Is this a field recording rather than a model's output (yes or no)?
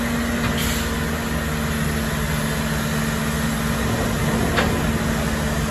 yes